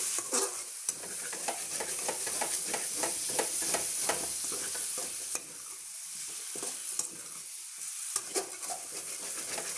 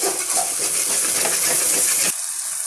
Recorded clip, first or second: second